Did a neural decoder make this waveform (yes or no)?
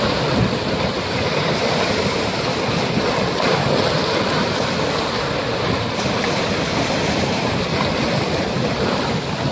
no